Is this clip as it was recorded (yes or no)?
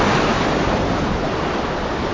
yes